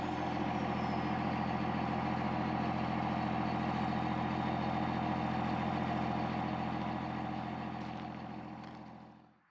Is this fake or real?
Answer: real